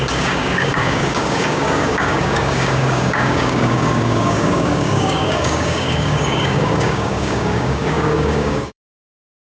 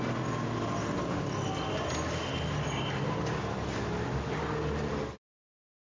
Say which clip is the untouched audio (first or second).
second